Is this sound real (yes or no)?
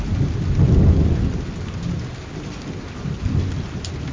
yes